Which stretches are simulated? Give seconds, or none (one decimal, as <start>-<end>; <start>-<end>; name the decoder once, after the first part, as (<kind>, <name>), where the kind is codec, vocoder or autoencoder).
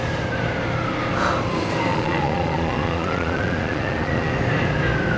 1.9-4.3 (vocoder, Vocos)